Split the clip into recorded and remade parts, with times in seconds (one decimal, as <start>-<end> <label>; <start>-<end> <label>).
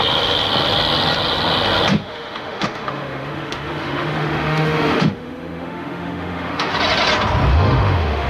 0.0-1.9 recorded; 1.9-6.7 remade; 6.7-7.5 recorded; 7.5-8.3 remade